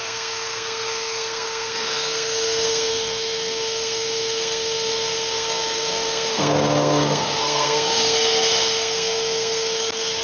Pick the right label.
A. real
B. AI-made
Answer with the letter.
B